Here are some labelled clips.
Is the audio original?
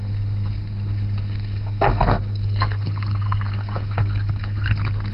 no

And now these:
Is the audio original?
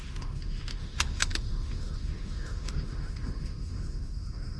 no